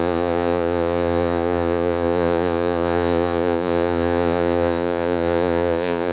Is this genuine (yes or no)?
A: no